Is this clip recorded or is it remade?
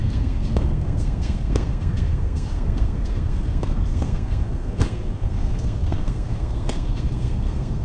remade